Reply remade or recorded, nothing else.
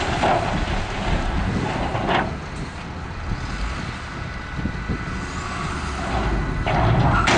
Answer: recorded